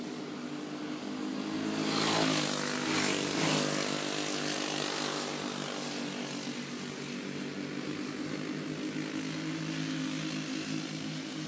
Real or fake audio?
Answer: real